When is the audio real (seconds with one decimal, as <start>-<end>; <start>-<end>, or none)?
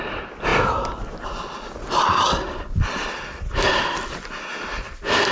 0.0-5.3